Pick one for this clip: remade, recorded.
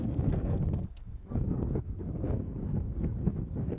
remade